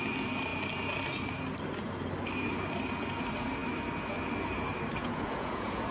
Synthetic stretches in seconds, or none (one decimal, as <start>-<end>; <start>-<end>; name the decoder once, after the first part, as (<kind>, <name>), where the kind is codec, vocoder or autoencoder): 5.0-5.9 (vocoder, Vocos)